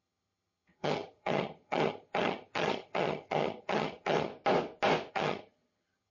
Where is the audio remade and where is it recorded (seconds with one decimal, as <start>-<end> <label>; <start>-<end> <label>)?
0.0-4.3 remade; 4.3-5.1 recorded; 5.1-6.1 remade